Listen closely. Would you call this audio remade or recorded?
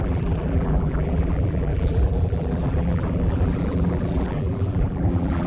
remade